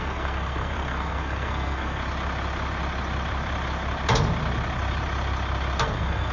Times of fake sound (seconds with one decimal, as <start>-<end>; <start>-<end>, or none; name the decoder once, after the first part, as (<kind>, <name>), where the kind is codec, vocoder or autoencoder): 0.0-2.0 (codec, SNAC); 5.8-6.3